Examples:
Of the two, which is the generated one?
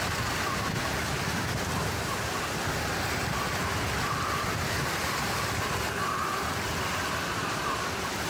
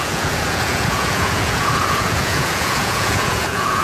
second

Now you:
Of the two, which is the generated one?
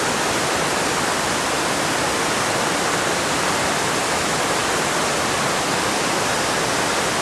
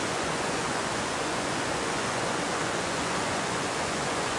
second